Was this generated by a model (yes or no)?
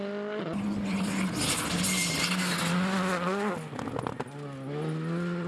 no